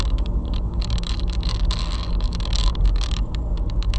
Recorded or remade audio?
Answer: remade